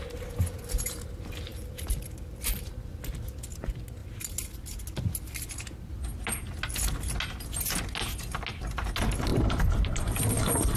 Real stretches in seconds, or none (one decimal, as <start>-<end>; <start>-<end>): 0.0-1.5; 2.4-9.3; 10.2-10.8